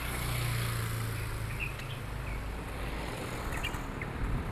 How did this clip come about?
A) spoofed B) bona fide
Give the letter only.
B